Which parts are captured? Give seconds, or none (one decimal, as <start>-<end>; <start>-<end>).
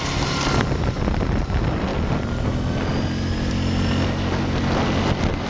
0.0-5.5